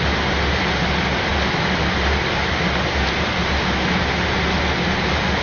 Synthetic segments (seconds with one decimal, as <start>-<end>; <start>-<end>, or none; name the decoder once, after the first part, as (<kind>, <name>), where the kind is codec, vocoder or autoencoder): none